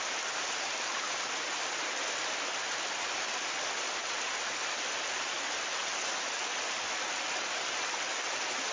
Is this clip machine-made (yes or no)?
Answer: no